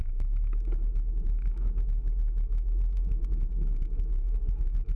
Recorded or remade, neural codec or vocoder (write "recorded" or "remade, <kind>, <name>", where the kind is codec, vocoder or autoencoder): remade, autoencoder, DAC-VAE